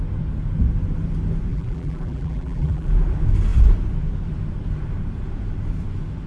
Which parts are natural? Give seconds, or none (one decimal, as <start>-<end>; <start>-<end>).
0.0-1.5; 2.9-6.3